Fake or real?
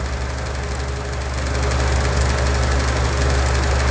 real